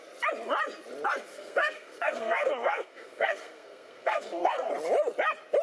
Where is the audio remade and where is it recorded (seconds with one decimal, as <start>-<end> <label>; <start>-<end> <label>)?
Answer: 0.0-1.3 recorded; 1.3-4.7 remade; 4.7-5.6 recorded